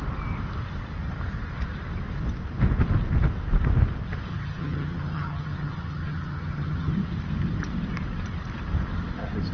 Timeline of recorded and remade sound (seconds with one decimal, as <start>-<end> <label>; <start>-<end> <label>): 0.0-4.3 recorded; 4.3-6.9 remade; 6.9-9.5 recorded